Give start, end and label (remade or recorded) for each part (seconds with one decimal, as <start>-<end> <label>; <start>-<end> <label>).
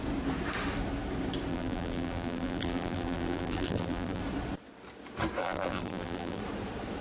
0.0-1.5 recorded; 1.5-4.2 remade; 4.2-5.4 recorded; 5.4-6.4 remade; 6.4-7.0 recorded